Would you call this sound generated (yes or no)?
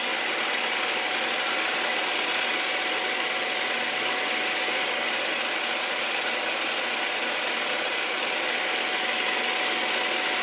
no